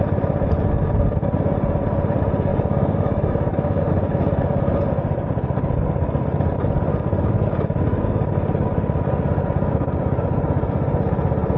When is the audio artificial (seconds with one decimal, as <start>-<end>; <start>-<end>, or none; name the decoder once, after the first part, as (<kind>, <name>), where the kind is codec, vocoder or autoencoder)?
2.5-3.9 (codec, DAC); 7.1-8.3